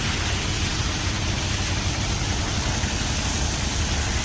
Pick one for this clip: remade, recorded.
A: recorded